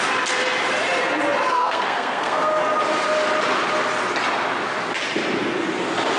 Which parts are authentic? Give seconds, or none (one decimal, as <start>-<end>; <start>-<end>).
0.0-1.5; 2.6-6.2